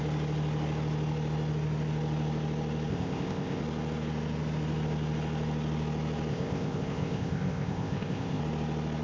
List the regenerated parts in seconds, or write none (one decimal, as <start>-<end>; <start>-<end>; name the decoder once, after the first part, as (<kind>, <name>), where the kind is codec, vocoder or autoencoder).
2.9-3.6 (codec, ZipCodec); 6.3-8.4